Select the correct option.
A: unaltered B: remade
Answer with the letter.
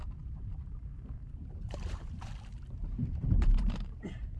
B